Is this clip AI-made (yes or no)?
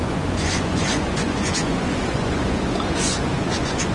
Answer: yes